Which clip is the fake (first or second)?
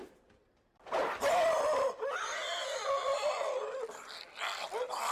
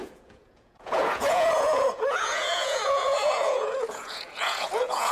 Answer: second